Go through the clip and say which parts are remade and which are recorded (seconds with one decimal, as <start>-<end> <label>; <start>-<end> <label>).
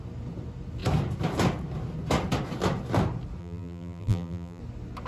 0.0-3.4 recorded; 3.4-4.6 remade; 4.6-5.1 recorded